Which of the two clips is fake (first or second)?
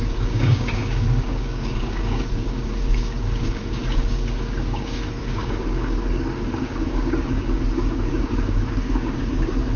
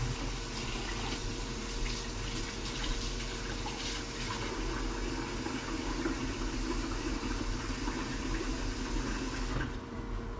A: first